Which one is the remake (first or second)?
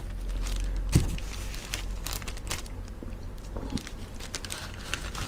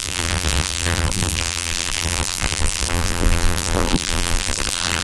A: second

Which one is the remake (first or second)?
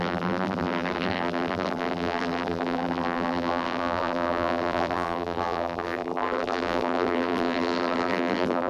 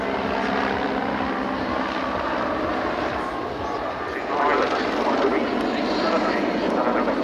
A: first